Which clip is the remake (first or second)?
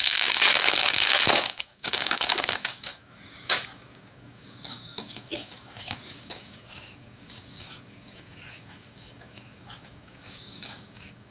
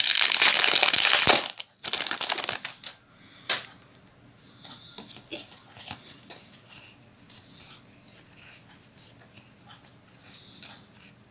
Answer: first